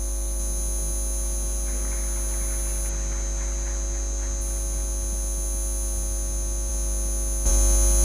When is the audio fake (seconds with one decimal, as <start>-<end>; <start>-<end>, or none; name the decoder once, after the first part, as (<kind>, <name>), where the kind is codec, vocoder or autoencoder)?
none